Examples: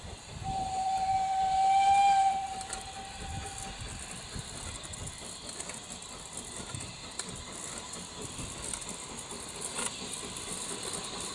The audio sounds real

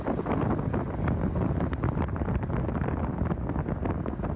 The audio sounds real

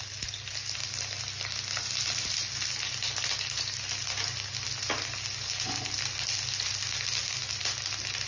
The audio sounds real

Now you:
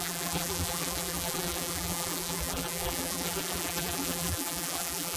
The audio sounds fake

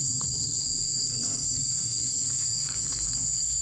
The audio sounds fake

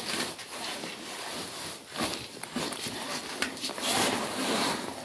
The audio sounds real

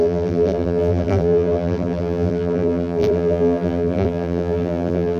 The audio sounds fake